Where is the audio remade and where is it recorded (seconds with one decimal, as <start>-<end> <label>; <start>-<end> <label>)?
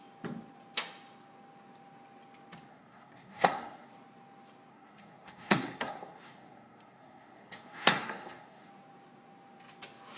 0.0-2.7 recorded; 2.7-3.9 remade; 3.9-4.7 recorded; 4.7-8.7 remade; 8.7-10.2 recorded